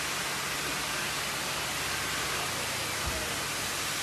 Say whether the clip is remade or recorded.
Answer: recorded